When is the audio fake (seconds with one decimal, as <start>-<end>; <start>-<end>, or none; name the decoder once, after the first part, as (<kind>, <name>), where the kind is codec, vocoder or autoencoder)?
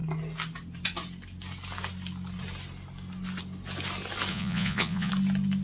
4.3-5.1 (vocoder, Vocos)